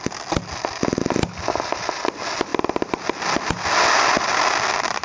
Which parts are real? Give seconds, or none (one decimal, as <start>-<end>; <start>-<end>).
0.0-5.0

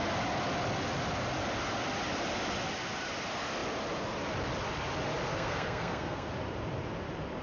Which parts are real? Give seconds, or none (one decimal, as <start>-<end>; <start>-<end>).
0.0-5.3; 6.3-7.4

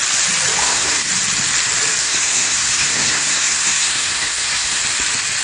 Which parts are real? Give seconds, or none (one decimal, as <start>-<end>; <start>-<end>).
0.0-0.6; 1.1-2.0; 4.8-5.4

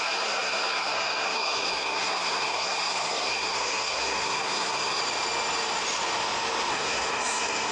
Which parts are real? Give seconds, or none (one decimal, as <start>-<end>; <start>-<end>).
5.0-6.7

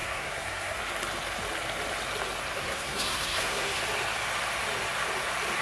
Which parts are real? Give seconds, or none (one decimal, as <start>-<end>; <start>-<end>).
0.8-2.5; 3.8-5.6

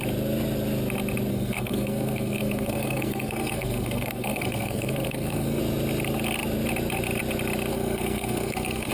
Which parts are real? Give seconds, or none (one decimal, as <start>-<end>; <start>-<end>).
0.0-1.3; 5.6-7.7

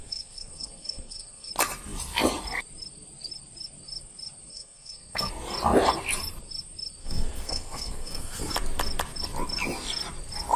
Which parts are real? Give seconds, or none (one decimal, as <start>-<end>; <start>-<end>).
1.5-4.5; 5.3-7.0; 8.5-10.6